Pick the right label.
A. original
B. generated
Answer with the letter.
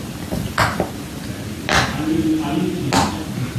A